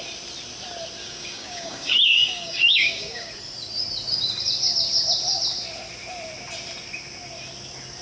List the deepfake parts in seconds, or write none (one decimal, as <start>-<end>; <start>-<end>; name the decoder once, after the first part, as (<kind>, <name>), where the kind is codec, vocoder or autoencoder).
1.0-3.3 (codec, DAC)